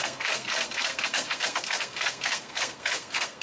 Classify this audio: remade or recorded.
remade